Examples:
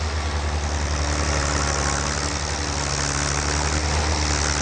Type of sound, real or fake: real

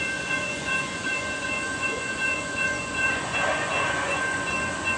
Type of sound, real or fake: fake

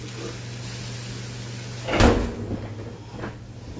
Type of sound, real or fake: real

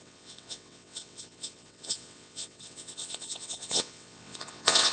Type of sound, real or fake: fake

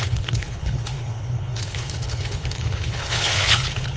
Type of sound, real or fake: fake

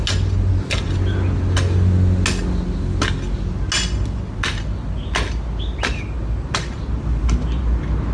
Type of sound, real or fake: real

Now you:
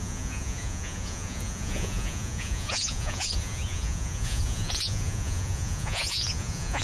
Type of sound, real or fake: fake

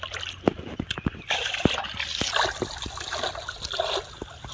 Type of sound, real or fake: real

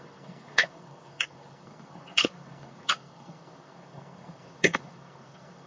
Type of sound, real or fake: fake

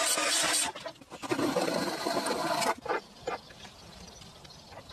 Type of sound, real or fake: fake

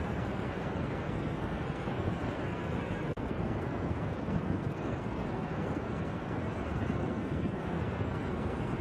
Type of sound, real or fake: fake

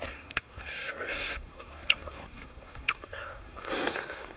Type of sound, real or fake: fake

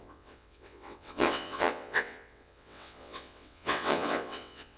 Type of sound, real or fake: fake